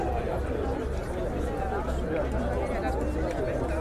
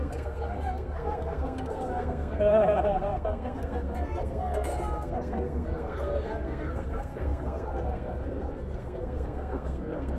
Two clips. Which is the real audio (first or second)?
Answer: first